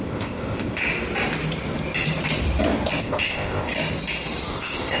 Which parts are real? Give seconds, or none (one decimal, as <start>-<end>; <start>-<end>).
0.8-3.0; 3.7-4.5